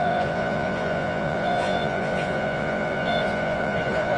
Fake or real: fake